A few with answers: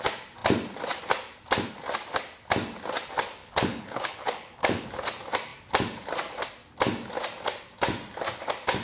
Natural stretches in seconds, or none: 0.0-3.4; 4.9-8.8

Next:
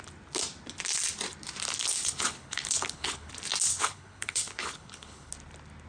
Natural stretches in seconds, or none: 0.0-2.0; 3.3-3.7; 5.3-5.9

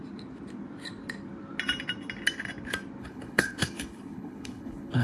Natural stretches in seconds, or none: 0.0-3.0

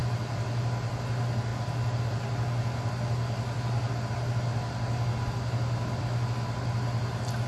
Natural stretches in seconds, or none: 0.0-7.5